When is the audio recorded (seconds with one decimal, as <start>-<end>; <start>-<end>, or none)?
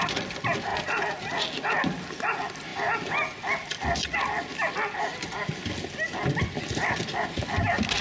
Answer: 0.0-8.0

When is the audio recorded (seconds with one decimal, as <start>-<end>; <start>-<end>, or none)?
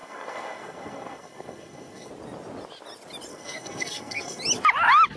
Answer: 2.1-3.3; 4.4-5.2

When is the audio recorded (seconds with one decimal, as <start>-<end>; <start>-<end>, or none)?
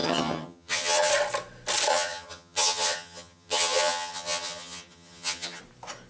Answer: 1.1-1.9; 5.6-6.1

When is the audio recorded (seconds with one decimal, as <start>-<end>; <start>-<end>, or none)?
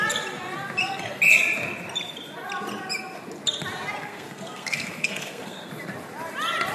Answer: 0.0-4.0; 5.7-6.7